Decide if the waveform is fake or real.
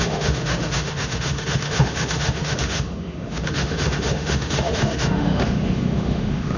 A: fake